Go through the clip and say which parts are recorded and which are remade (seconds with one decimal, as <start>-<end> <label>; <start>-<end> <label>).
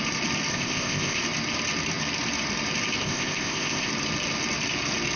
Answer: 0.0-0.5 recorded; 0.5-1.2 remade; 1.2-3.0 recorded; 3.0-3.9 remade; 3.9-5.2 recorded